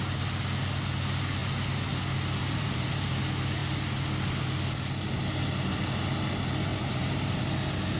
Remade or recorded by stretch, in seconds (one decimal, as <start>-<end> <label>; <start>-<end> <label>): 0.0-2.4 recorded; 2.4-2.9 remade; 2.9-6.7 recorded; 6.7-7.3 remade; 7.3-8.0 recorded